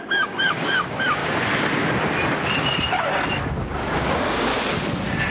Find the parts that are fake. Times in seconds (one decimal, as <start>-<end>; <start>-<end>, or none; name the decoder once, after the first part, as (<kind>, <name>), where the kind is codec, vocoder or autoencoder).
0.0-1.2 (codec, DAC); 3.5-4.5